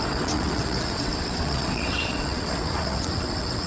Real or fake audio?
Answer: fake